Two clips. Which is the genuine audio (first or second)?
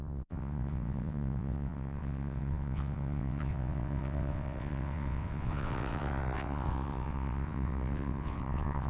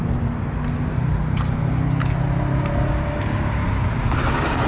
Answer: second